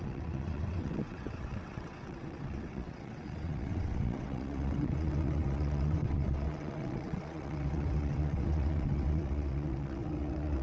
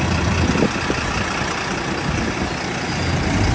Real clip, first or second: second